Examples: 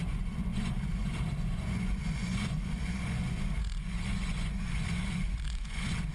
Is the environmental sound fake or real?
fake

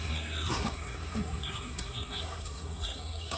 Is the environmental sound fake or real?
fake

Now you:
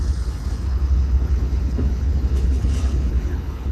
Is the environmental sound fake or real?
fake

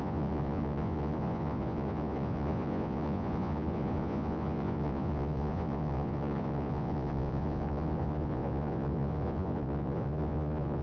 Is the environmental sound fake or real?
fake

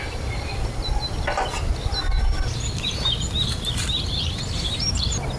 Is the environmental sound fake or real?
fake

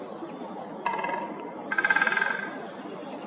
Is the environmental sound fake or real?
real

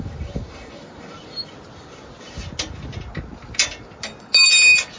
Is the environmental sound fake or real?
real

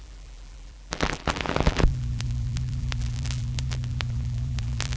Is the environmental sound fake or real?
fake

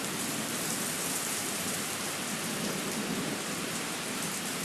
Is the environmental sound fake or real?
fake